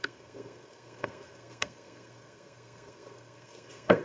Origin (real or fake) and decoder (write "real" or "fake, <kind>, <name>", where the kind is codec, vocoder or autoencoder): fake, codec, SNAC